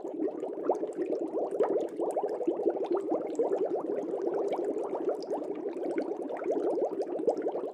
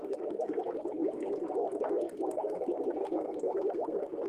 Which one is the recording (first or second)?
first